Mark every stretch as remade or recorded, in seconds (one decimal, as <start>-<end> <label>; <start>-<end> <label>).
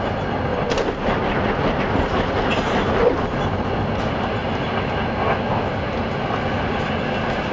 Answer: 0.0-7.5 recorded